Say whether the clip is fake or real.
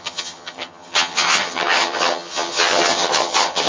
fake